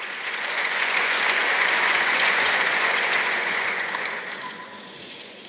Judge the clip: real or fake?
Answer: fake